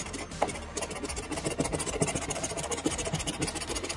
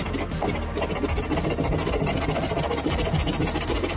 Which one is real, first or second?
second